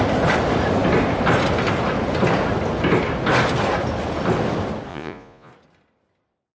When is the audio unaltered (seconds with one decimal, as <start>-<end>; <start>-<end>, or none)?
0.0-4.9; 5.5-6.6